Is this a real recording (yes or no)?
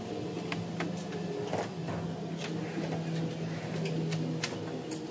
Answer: yes